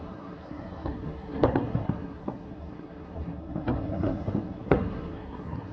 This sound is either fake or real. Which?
fake